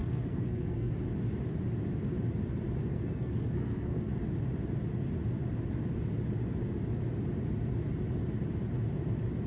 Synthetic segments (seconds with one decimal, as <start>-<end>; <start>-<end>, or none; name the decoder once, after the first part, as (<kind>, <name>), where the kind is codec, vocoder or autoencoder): 0.0-0.9 (codec, SNAC); 2.9-4.1